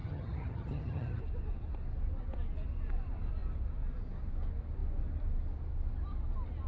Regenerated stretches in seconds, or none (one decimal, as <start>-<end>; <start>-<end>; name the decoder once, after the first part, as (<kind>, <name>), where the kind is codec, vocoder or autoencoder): 0.0-1.2 (vocoder, HiFi-GAN)